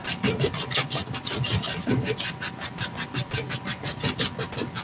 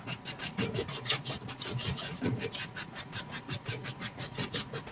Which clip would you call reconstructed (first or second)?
second